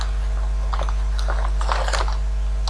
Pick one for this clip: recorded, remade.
recorded